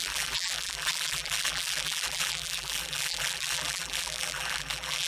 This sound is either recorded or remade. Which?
remade